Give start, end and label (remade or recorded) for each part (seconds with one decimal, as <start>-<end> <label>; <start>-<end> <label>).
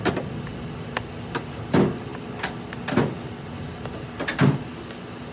0.0-5.3 recorded